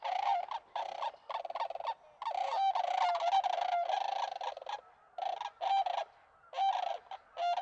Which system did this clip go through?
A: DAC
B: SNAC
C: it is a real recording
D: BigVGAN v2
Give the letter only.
C